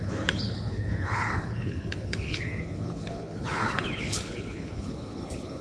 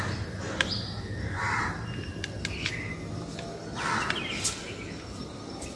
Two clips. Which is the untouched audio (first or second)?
second